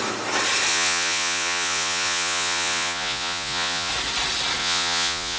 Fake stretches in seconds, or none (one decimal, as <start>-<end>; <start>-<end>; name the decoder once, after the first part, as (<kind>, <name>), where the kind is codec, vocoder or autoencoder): 0.7-3.9 (vocoder, Vocos); 4.6-5.4